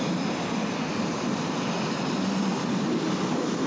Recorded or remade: recorded